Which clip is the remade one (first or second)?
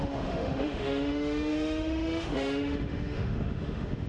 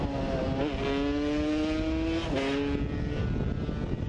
first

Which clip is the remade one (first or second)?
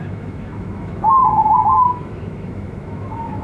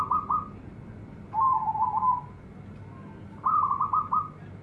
first